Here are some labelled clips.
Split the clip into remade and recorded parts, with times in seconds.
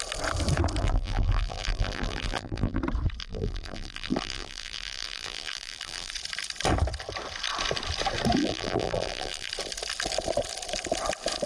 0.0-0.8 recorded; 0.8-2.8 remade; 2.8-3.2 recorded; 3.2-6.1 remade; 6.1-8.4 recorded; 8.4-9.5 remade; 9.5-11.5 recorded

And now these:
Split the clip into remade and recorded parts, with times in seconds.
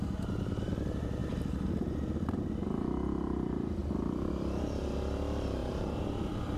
0.0-1.2 recorded; 1.2-1.7 remade; 1.7-3.8 recorded; 3.8-4.3 remade; 4.3-5.6 recorded; 5.6-6.6 remade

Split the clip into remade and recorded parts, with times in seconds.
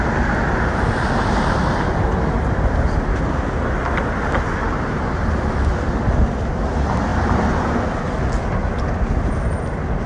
0.0-10.1 recorded